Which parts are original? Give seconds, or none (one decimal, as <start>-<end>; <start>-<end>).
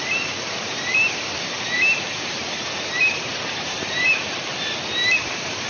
0.0-3.3; 4.5-5.7